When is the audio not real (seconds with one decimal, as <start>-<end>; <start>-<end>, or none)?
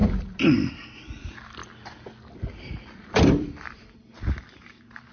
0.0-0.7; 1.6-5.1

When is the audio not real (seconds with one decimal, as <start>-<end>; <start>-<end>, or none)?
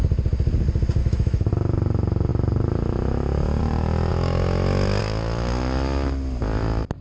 1.0-1.5; 4.1-5.0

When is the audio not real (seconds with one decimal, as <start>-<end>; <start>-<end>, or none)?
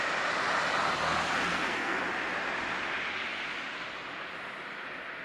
1.5-2.0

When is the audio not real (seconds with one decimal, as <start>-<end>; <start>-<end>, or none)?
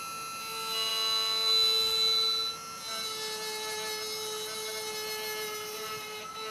none